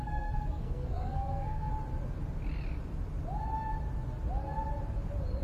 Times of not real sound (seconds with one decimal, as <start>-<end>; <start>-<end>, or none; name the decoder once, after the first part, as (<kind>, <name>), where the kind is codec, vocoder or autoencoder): 0.0-1.7 (codec, SNAC)